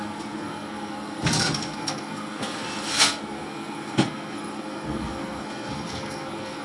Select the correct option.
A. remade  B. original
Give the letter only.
A